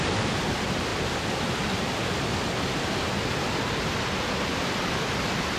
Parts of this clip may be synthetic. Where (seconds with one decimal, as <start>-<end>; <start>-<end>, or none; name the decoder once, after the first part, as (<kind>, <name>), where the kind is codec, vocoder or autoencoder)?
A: none